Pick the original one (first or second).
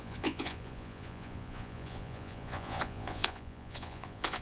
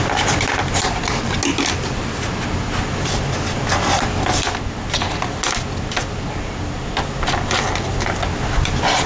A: second